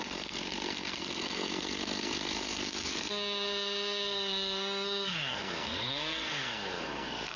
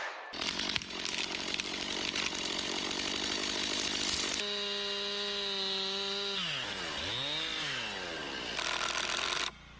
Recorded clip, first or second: second